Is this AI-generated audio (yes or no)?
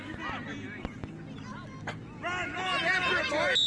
no